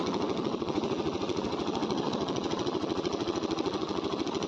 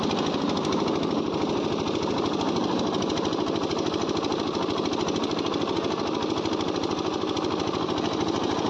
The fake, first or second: first